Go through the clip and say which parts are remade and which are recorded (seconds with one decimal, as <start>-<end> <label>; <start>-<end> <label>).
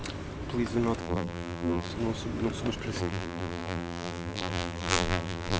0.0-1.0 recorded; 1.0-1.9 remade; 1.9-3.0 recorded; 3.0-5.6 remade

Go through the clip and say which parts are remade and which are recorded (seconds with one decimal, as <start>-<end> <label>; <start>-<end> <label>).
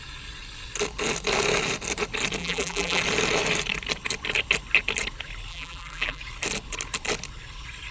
0.0-2.4 recorded; 2.4-3.0 remade; 3.0-5.5 recorded; 5.5-6.2 remade; 6.2-7.9 recorded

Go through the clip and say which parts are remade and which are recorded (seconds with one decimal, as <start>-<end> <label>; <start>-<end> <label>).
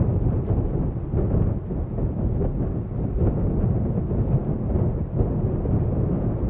0.0-6.5 recorded